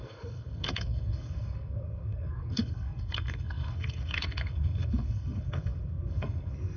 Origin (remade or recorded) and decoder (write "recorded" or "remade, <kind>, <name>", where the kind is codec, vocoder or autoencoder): remade, codec, SNAC